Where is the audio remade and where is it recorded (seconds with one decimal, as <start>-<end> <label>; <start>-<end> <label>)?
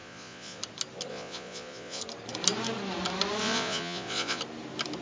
0.0-0.6 remade; 0.6-1.1 recorded; 1.1-2.0 remade; 2.0-3.4 recorded; 3.4-4.4 remade; 4.4-5.0 recorded